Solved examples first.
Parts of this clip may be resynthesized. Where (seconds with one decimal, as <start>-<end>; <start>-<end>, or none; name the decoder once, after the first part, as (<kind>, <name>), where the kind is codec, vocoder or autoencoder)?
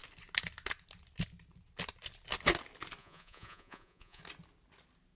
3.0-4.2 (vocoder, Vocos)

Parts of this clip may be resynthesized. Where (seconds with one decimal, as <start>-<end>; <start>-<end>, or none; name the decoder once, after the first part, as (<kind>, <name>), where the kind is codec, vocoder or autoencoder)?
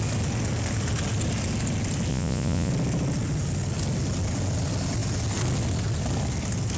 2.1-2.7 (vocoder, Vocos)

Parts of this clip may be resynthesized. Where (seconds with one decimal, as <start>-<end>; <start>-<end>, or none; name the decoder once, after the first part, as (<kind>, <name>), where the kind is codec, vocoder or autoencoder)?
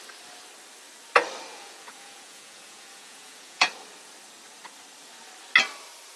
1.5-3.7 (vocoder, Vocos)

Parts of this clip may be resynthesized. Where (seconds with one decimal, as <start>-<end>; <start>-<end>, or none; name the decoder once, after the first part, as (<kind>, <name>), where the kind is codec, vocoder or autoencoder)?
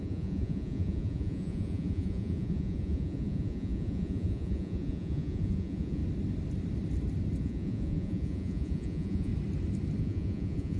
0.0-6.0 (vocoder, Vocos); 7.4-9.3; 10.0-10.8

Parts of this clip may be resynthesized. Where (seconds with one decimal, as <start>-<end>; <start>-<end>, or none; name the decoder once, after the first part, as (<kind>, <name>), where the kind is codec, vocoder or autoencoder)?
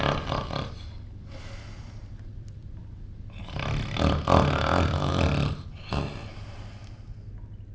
none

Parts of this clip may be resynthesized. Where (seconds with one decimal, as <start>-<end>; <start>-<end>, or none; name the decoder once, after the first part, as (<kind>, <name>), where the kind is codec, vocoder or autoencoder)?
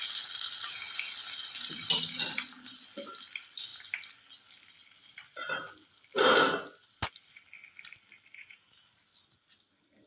none